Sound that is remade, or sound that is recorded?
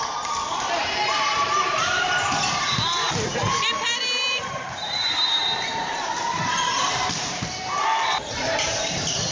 remade